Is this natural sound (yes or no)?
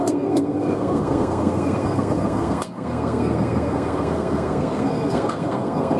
no